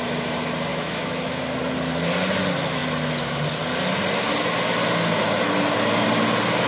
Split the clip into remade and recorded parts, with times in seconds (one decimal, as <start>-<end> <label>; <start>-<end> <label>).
0.0-0.7 recorded; 0.7-1.4 remade; 1.4-6.7 recorded